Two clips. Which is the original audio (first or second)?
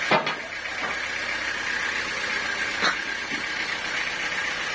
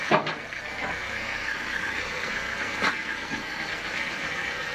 first